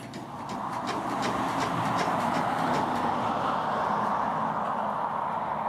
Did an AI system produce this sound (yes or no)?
no